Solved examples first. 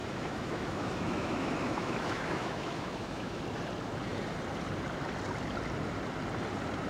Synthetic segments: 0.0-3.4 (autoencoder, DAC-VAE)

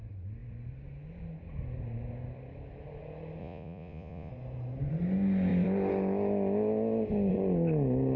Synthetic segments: 3.4-4.3 (vocoder, Vocos)